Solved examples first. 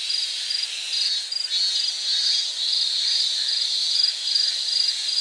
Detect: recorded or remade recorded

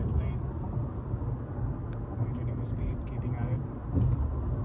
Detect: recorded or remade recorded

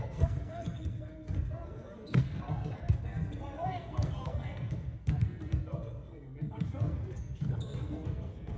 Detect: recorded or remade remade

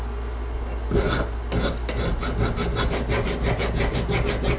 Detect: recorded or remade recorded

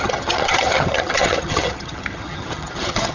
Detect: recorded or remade remade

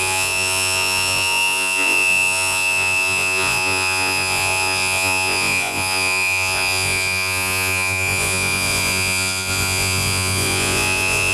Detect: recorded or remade remade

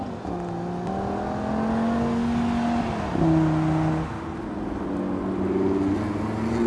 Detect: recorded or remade recorded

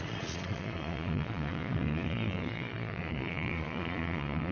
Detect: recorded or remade remade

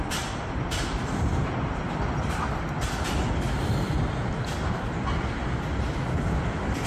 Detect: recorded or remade recorded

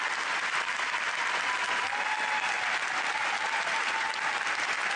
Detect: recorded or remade recorded